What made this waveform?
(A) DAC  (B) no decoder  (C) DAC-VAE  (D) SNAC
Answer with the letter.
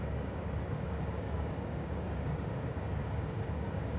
A